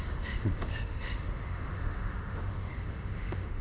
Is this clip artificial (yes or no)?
yes